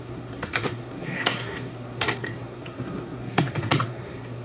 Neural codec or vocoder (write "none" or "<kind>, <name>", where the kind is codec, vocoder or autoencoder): codec, SNAC